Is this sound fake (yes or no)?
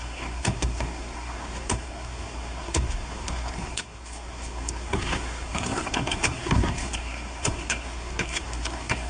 yes